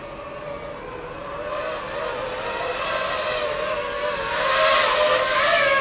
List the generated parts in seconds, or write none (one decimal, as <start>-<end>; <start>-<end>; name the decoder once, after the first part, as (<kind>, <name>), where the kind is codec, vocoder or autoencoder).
none